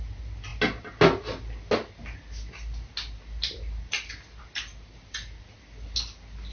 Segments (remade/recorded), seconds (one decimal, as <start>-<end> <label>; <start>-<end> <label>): 0.0-6.5 recorded